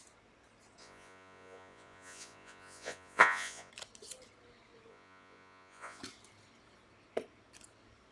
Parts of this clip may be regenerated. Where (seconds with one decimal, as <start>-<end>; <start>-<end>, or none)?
0.8-3.7; 4.9-6.0